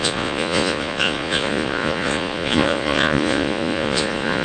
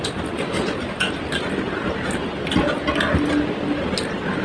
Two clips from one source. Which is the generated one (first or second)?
first